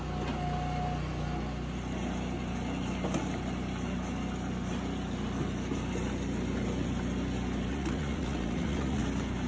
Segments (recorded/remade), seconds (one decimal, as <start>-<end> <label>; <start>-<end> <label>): 0.0-7.7 recorded; 7.7-9.0 remade; 9.0-9.5 recorded